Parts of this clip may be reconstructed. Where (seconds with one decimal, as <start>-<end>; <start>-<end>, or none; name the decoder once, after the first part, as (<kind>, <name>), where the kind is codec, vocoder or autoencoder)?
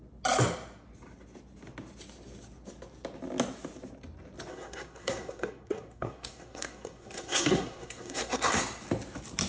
4.5-8.6 (codec, SNAC)